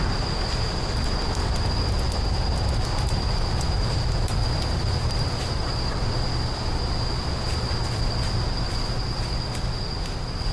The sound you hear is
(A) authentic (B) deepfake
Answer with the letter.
A